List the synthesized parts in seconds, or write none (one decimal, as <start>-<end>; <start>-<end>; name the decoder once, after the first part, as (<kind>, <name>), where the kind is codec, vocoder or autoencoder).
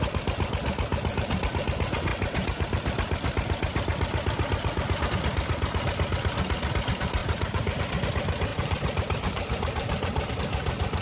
7.2-8.0 (vocoder, BigVGAN v2); 8.5-10.3